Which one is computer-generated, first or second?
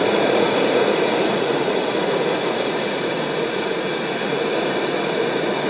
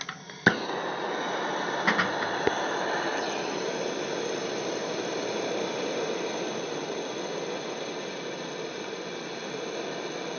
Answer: first